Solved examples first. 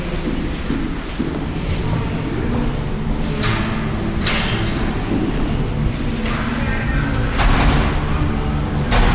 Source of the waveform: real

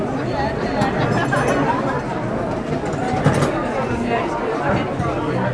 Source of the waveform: real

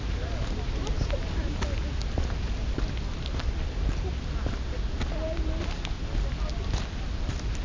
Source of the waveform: real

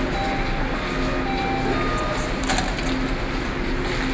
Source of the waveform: real